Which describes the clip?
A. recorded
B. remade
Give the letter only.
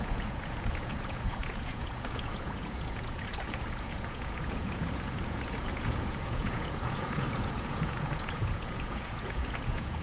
B